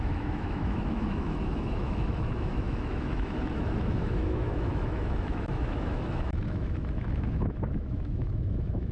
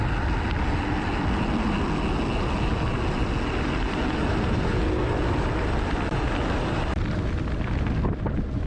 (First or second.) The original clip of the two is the second